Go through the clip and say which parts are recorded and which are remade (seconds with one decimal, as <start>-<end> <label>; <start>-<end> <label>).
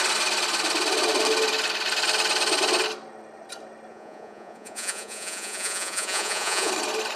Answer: 0.0-3.9 recorded; 3.9-6.7 remade; 6.7-7.2 recorded